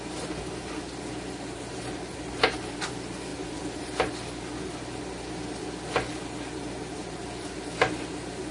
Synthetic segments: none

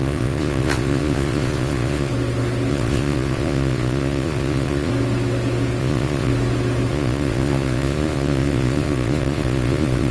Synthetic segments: 0.0-2.1; 2.7-4.9; 5.8-6.3; 6.9-10.1

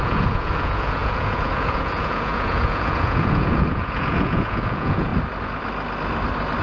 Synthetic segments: 0.0-5.1

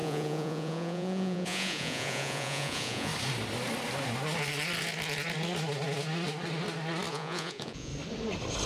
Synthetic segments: 0.0-3.1; 7.1-7.9

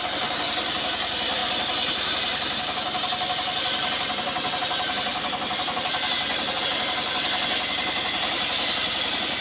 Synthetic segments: none